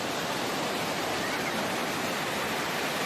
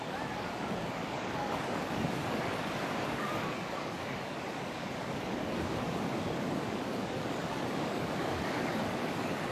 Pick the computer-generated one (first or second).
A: second